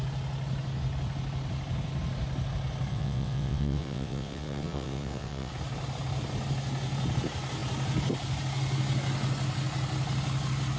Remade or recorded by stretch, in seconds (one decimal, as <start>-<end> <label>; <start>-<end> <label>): 0.0-2.9 recorded; 2.9-5.5 remade; 5.5-10.8 recorded